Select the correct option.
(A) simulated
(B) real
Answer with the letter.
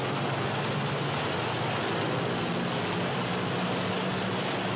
B